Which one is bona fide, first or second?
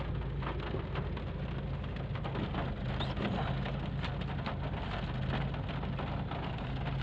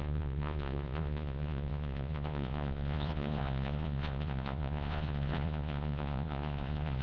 first